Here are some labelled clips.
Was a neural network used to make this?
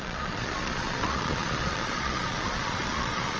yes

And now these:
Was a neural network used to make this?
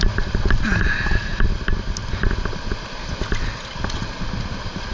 no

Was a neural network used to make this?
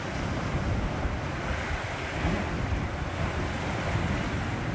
no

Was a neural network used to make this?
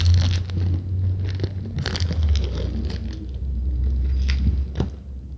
no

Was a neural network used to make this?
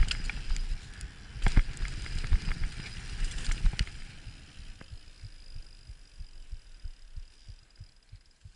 no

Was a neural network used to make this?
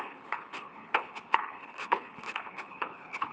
yes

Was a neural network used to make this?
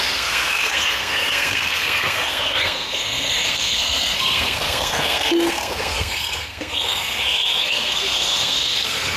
yes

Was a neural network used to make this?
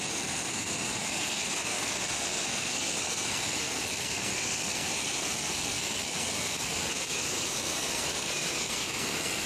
yes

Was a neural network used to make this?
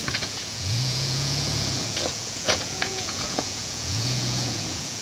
yes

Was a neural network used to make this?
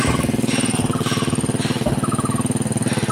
no